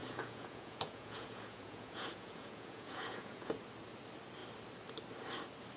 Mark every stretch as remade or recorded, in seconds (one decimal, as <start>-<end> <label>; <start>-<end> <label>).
0.0-3.5 remade; 3.5-5.8 recorded